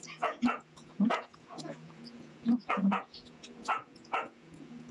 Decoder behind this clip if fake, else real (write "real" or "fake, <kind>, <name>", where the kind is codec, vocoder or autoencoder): fake, vocoder, Vocos